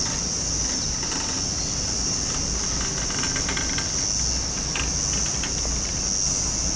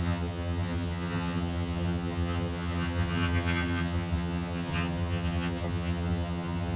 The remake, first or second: second